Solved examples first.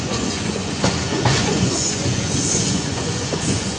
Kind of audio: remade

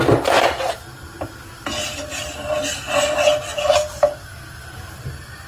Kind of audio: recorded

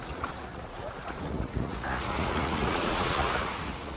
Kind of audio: remade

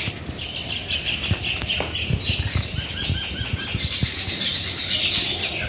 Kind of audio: recorded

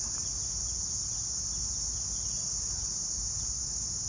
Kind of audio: recorded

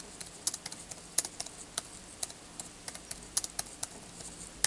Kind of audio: recorded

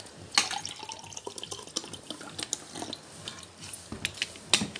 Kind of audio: recorded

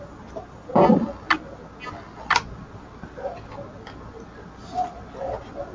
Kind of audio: recorded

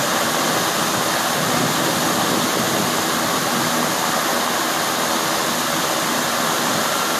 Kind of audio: recorded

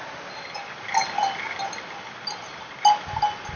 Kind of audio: recorded